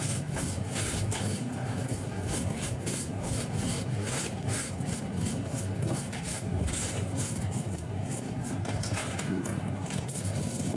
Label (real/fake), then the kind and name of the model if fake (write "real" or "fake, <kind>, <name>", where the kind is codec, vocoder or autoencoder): fake, codec, SNAC